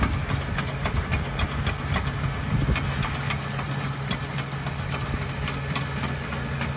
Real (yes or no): yes